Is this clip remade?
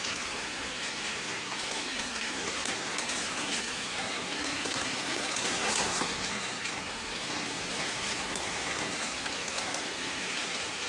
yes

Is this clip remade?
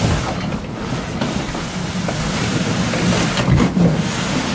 no